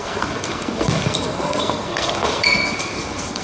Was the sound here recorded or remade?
remade